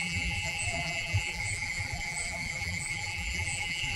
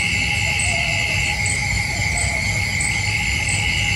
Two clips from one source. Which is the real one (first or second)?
second